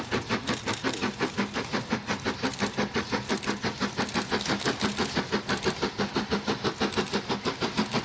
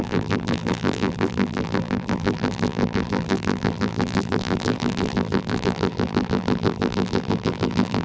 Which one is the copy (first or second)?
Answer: second